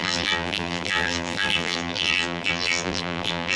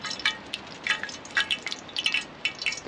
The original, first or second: second